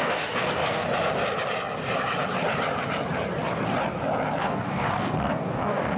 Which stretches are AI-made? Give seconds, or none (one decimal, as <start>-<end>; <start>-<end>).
0.0-0.8; 4.4-6.0